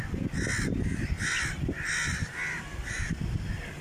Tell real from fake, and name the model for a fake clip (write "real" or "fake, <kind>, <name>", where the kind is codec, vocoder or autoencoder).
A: real